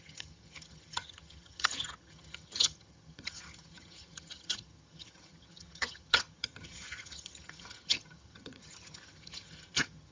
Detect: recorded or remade remade